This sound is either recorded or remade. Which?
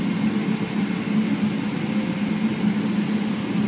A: recorded